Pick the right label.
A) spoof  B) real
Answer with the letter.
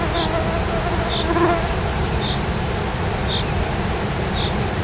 B